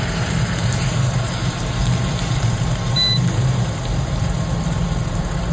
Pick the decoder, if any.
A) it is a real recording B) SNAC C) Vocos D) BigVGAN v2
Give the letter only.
D